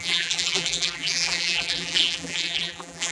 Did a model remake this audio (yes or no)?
yes